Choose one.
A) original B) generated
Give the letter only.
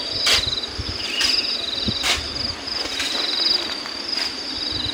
A